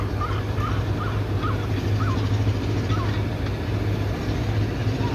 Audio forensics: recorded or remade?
recorded